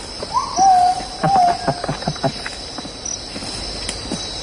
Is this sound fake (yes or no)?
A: no